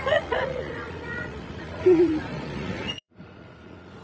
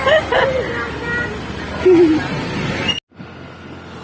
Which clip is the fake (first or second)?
first